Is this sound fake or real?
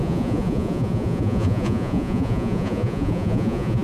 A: fake